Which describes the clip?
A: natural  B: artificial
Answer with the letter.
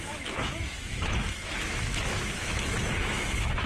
B